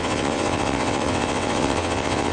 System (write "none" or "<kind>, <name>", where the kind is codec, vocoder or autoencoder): vocoder, WaveNeXt